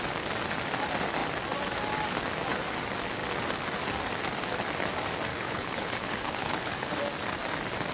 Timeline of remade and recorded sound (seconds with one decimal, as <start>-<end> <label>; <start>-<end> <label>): 0.0-5.3 recorded; 5.3-7.0 remade; 7.0-7.9 recorded